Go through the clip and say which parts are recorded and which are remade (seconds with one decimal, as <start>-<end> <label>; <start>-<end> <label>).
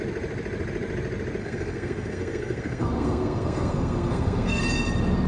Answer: 0.0-1.4 recorded; 1.4-4.6 remade; 4.6-5.3 recorded